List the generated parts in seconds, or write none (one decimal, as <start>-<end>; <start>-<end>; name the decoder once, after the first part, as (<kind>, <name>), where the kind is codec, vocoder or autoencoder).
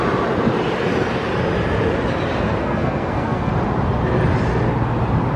2.6-3.5 (codec, SNAC)